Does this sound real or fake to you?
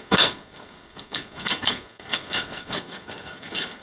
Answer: fake